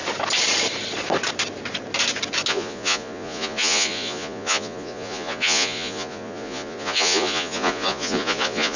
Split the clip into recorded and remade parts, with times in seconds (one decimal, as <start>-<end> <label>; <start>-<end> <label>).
0.0-2.5 recorded; 2.5-8.8 remade